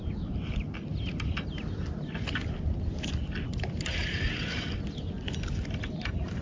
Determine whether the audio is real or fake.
real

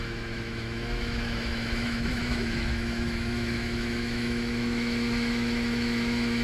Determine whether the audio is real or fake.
fake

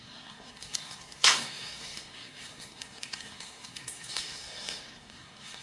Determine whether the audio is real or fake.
fake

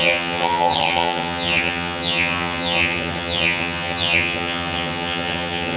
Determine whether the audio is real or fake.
fake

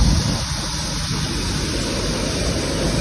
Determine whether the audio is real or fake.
real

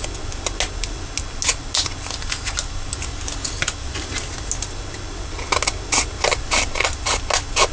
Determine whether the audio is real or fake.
real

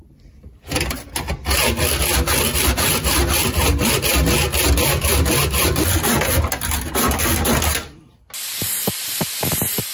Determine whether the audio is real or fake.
real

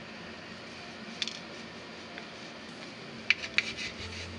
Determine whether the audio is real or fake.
real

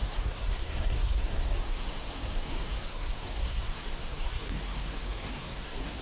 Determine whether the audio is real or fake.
fake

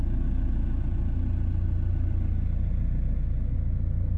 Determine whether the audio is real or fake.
real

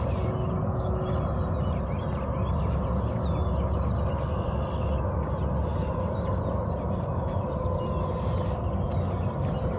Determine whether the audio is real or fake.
real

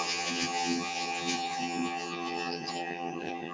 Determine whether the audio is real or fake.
fake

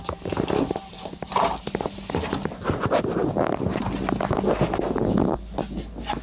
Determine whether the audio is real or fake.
real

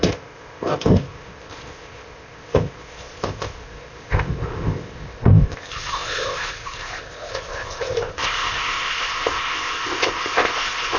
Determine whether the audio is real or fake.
fake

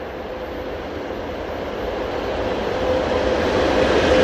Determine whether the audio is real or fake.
real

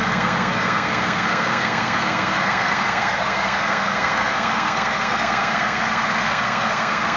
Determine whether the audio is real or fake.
fake